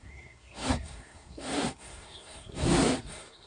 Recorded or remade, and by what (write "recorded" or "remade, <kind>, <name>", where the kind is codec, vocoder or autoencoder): remade, codec, SNAC